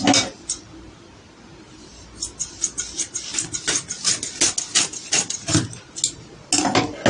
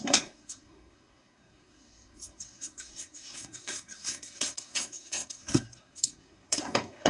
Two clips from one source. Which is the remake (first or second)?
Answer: second